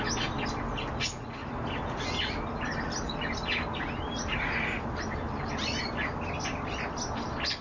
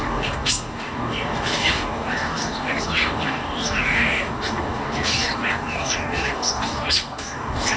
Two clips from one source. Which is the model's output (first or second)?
second